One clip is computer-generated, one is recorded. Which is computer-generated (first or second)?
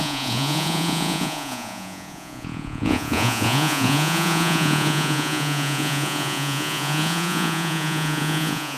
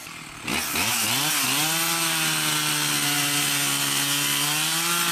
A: first